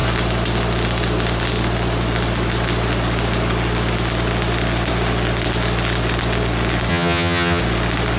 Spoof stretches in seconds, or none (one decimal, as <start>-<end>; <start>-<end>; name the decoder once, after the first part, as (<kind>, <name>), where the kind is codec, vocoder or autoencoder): 6.9-7.6 (vocoder, HiFi-GAN)